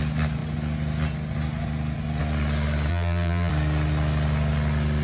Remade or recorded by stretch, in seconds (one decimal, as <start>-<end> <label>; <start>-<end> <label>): 0.0-2.9 recorded; 2.9-3.5 remade; 3.5-5.0 recorded